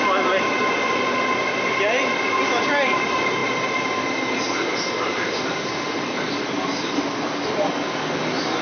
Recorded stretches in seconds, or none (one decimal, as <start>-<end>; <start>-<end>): 0.0-8.6